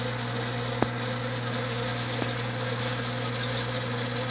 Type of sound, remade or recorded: recorded